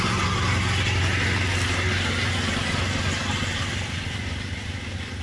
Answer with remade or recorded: recorded